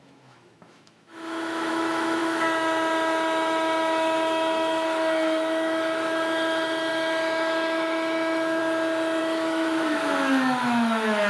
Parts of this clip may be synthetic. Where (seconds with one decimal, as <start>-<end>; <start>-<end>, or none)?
0.0-8.6; 9.2-11.3